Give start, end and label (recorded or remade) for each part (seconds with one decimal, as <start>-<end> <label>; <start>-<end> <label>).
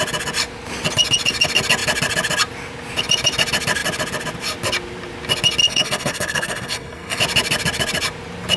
0.0-5.6 recorded; 5.6-7.2 remade; 7.2-8.6 recorded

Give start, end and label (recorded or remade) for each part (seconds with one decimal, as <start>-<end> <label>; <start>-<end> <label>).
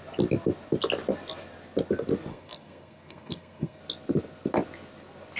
0.0-2.3 recorded; 2.3-3.8 remade; 3.8-5.4 recorded